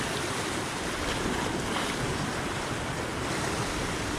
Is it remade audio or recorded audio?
recorded